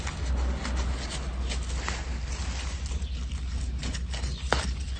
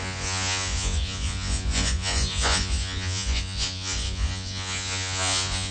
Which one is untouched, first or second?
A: first